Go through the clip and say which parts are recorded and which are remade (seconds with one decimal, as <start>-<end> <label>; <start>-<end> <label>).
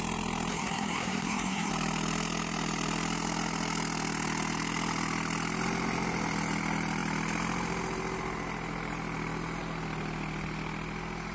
0.0-0.5 recorded; 0.5-1.7 remade; 1.7-11.3 recorded